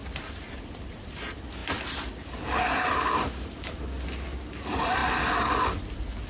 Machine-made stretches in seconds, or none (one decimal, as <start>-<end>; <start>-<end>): 0.0-1.2